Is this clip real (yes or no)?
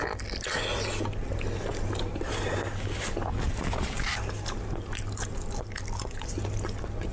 yes